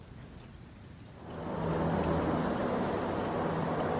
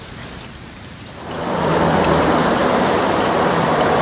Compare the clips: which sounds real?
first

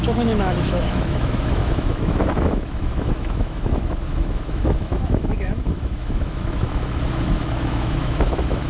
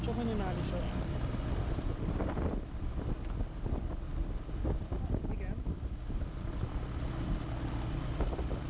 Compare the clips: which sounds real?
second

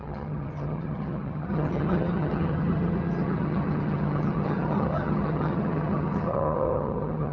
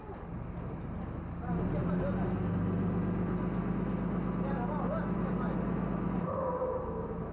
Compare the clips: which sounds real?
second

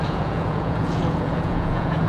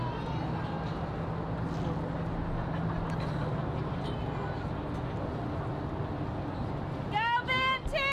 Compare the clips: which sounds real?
second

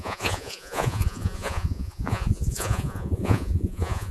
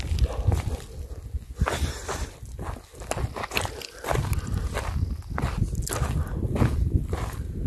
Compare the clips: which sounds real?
second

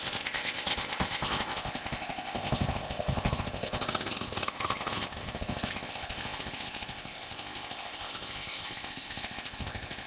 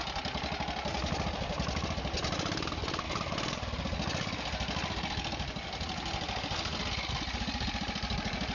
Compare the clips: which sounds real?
second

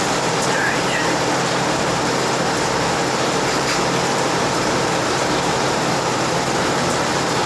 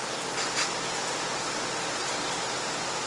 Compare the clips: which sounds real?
second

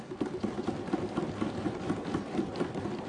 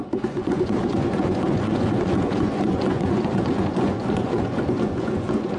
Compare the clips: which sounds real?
first